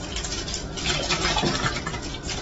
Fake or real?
real